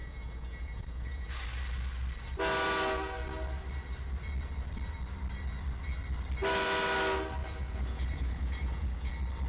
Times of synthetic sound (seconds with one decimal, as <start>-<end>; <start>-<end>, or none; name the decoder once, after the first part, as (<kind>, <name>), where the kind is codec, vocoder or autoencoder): 0.0-1.3 (vocoder, Vocos); 7.4-9.1